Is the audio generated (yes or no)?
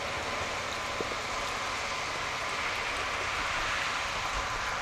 no